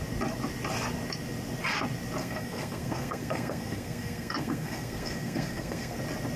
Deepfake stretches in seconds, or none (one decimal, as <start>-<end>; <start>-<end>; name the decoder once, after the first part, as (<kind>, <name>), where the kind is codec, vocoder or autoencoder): 2.2-6.0 (codec, SNAC)